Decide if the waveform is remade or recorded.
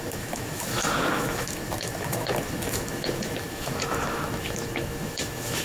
remade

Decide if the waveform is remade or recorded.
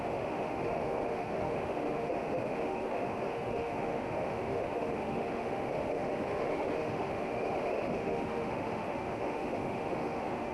remade